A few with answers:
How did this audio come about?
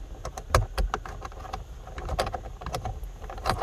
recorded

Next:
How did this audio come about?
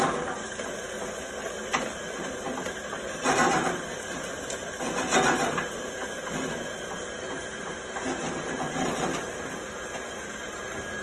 recorded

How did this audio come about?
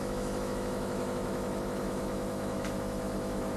remade